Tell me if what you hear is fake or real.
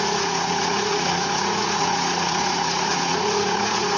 fake